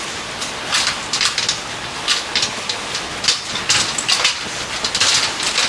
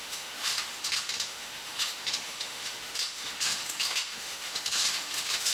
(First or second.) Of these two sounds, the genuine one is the first